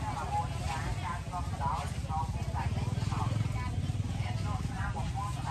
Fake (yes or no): no